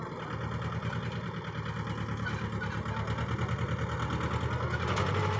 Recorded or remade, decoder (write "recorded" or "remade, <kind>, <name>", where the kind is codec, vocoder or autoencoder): recorded